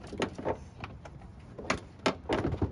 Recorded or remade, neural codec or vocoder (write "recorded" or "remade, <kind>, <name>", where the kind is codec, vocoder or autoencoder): recorded